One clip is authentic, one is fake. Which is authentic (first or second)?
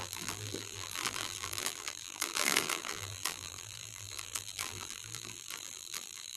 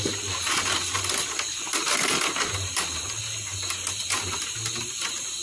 second